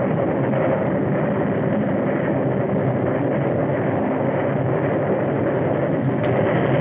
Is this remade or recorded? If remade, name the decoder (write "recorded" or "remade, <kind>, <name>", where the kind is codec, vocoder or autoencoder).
recorded